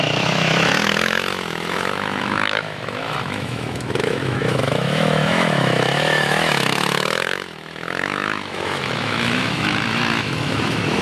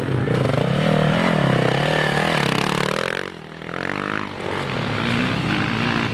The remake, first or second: first